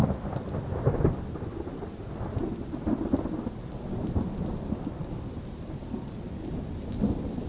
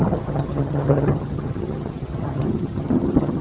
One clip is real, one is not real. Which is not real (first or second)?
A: second